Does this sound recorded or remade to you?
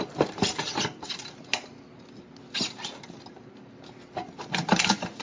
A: recorded